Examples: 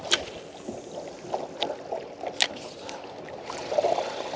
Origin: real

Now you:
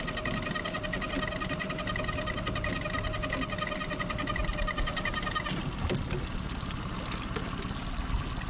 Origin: real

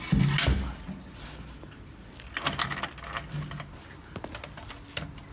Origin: real